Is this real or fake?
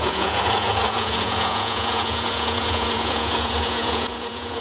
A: fake